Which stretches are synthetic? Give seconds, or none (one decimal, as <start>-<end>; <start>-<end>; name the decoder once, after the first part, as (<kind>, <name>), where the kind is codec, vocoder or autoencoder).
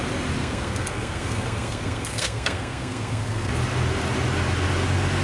0.4-3.5 (codec, SNAC)